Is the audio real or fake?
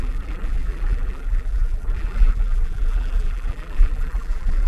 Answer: fake